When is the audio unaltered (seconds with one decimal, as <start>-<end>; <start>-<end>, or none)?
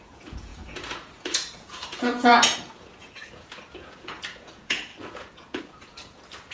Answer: none